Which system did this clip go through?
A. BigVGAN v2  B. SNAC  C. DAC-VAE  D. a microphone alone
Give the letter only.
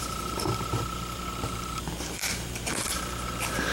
D